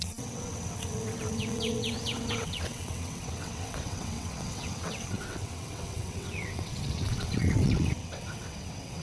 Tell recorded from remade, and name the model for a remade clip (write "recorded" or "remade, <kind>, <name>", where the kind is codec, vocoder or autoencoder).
remade, vocoder, WaveNeXt